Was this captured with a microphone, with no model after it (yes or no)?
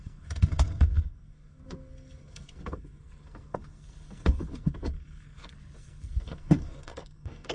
no